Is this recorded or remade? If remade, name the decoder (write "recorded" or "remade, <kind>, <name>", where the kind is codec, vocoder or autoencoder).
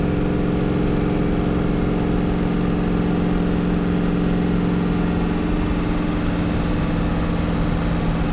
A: recorded